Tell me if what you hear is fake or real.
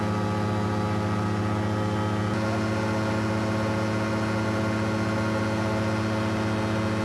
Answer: real